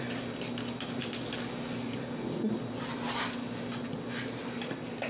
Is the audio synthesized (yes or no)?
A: no